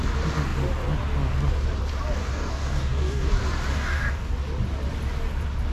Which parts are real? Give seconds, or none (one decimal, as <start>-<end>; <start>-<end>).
0.0-2.2; 3.3-3.7; 4.3-5.7